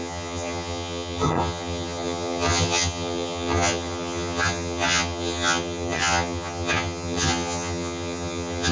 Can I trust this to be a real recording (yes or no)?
no